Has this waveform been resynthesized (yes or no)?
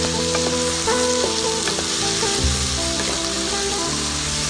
no